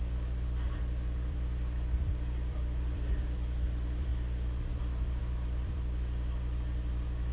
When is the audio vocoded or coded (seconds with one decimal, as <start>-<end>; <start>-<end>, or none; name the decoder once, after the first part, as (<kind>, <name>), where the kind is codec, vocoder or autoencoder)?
0.0-4.1 (vocoder, BigVGAN v2); 5.2-7.3